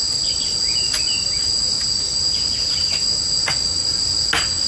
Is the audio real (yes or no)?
yes